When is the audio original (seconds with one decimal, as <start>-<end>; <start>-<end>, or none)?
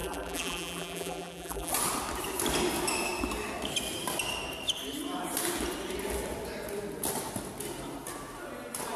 1.7-9.0